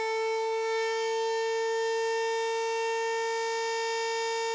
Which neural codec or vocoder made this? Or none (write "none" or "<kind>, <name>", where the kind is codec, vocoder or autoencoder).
none